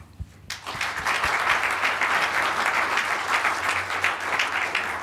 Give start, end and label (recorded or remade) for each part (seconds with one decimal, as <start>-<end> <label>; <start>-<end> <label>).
0.0-5.0 recorded